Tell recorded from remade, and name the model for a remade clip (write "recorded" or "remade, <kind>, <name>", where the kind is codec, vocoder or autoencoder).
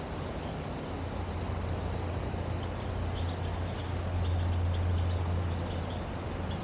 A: recorded